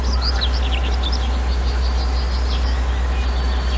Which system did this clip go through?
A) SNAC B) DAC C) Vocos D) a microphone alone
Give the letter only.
D